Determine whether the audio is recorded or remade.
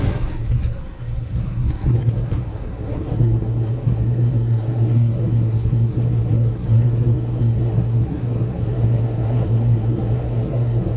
remade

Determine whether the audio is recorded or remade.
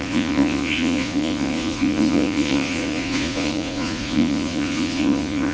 remade